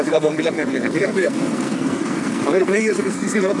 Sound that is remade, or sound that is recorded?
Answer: remade